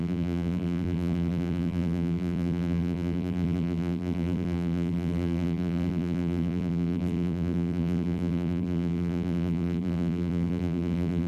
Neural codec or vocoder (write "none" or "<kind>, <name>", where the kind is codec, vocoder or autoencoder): vocoder, BigVGAN v2